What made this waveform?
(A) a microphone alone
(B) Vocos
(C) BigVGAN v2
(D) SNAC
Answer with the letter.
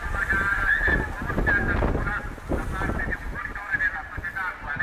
A